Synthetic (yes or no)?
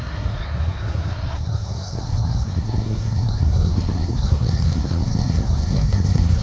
yes